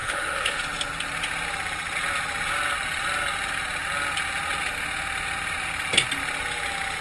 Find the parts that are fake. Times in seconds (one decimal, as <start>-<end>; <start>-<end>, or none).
0.0-0.6